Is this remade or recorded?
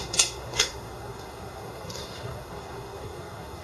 remade